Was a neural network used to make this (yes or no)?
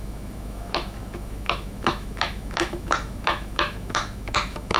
yes